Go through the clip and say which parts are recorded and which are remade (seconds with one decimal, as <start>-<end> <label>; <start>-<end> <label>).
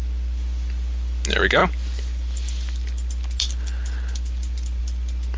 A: 0.0-5.4 recorded